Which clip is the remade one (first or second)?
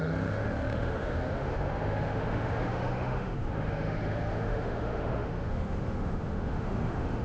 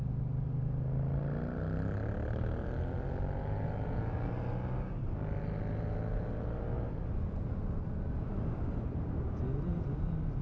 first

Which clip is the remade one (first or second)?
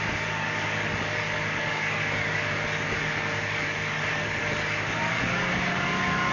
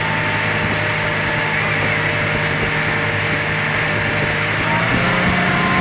first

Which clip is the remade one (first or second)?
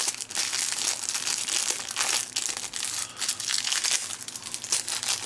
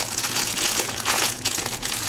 second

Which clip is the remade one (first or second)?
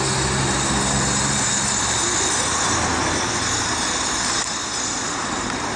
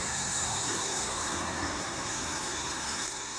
second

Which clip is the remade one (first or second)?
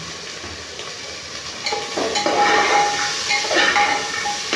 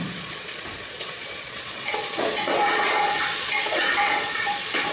second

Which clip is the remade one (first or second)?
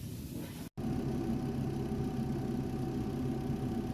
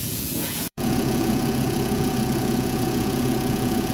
second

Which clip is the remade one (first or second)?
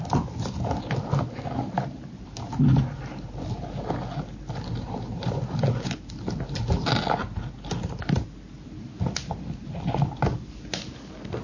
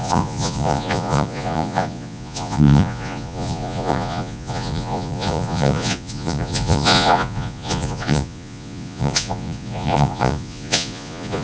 second